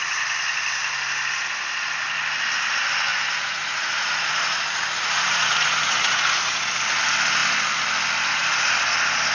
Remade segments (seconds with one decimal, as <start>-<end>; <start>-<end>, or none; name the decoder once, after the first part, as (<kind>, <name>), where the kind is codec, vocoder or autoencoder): 3.1-6.7 (vocoder, Vocos)